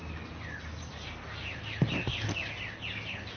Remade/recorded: recorded